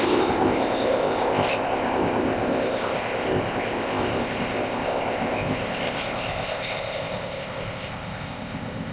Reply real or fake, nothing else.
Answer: fake